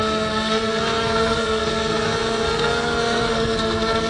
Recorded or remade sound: remade